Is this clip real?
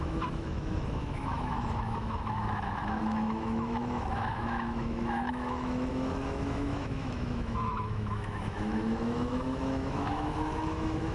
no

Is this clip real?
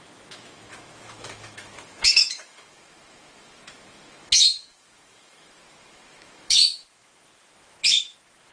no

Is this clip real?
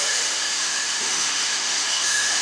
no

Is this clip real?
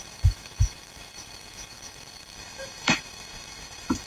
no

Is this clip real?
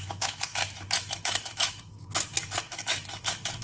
no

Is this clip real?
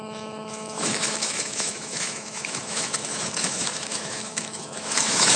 no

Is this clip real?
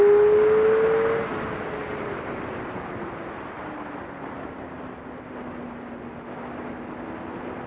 yes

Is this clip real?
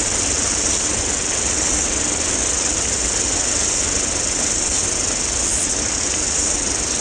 yes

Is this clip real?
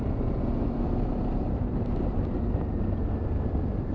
yes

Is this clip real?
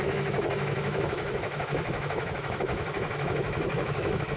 no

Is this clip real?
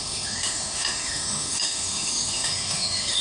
no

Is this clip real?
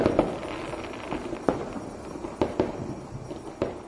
yes